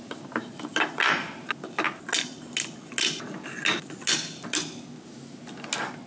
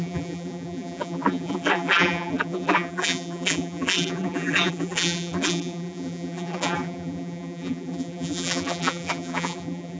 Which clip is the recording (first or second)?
first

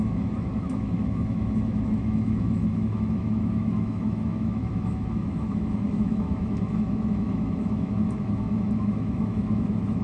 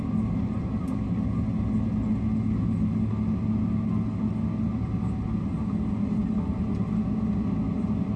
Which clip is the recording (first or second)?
second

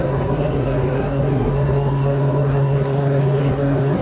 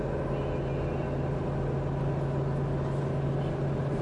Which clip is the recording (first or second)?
second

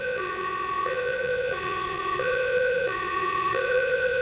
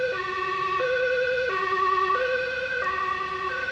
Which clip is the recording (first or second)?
second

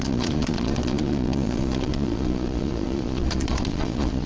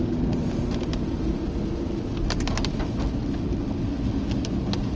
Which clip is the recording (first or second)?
second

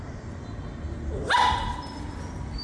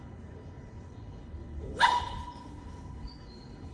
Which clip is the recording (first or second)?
first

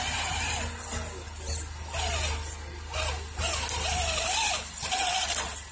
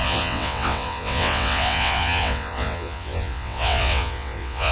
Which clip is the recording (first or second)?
first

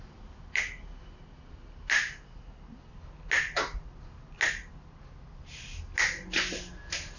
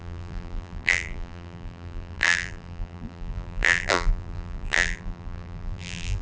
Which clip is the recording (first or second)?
first